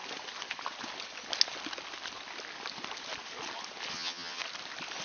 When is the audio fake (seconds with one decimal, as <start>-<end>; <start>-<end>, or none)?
3.9-4.4